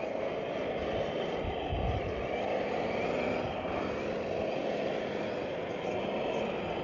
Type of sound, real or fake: real